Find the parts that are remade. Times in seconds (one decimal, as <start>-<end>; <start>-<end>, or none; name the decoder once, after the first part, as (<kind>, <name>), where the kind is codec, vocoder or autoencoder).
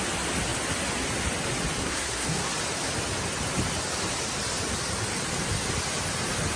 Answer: 1.8-2.5 (codec, SNAC)